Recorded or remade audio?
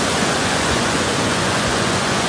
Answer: remade